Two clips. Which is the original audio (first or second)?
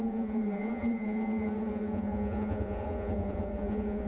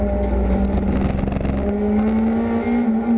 second